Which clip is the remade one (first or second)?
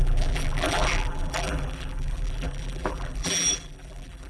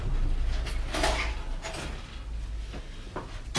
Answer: first